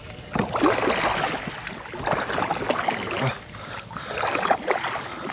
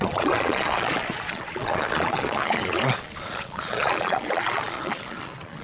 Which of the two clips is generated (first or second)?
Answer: second